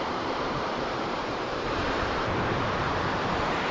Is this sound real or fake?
fake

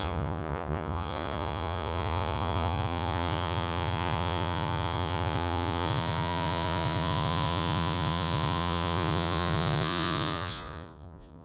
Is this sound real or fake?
fake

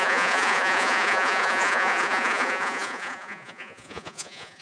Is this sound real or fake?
fake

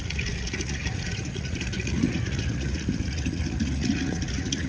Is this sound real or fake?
fake